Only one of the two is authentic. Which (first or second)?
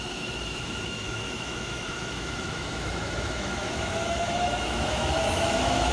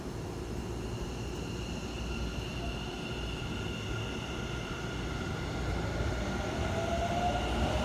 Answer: second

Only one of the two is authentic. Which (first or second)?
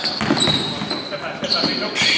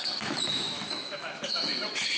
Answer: first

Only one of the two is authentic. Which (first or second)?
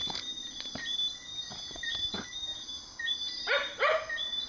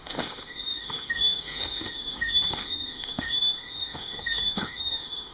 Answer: first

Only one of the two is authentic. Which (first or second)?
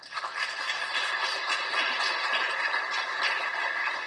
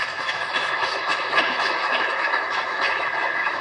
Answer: first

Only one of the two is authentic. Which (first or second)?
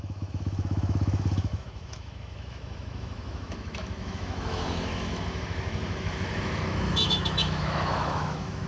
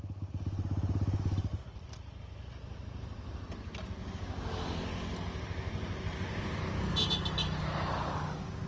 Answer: second